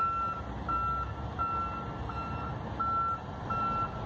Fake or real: real